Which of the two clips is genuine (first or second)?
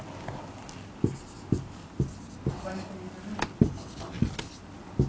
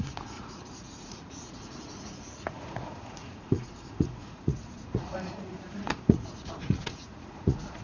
first